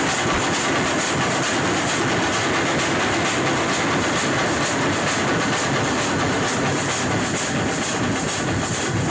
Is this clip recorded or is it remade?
recorded